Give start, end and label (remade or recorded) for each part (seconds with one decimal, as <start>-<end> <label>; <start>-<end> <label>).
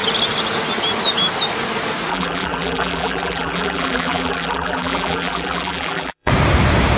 0.0-2.1 recorded; 2.1-6.3 remade; 6.3-7.0 recorded